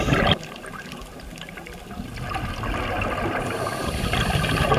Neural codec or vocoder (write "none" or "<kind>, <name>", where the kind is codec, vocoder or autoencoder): none